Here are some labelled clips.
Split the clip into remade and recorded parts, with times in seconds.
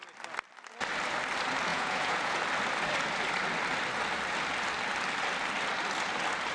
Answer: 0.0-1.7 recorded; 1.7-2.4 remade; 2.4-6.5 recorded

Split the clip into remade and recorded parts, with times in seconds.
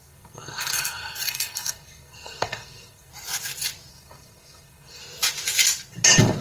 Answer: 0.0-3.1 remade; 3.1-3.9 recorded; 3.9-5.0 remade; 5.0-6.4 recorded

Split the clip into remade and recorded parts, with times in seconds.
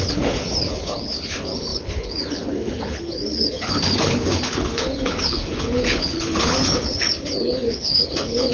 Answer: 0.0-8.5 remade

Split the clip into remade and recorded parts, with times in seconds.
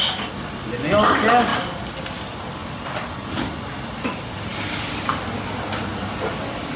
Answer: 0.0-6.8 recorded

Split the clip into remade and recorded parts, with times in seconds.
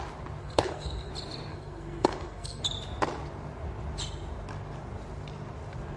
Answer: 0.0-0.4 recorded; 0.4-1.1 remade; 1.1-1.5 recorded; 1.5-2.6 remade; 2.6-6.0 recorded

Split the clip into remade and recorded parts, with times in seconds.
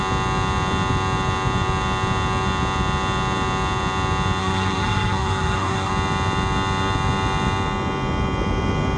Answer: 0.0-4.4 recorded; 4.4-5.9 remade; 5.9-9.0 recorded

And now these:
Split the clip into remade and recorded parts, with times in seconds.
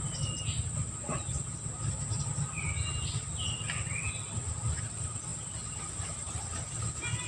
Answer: 0.0-5.3 recorded; 5.3-6.8 remade; 6.8-7.3 recorded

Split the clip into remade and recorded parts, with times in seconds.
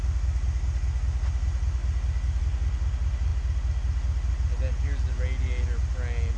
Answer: 0.0-6.4 recorded